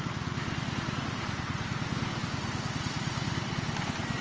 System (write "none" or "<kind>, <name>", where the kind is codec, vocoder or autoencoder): none